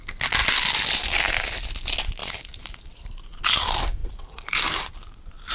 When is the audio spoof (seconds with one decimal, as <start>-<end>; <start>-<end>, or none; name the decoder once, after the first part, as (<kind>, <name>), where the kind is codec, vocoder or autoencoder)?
2.2-3.1 (vocoder, BigVGAN v2); 4.0-4.9